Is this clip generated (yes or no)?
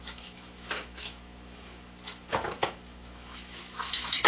yes